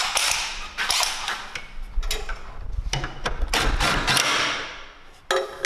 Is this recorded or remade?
recorded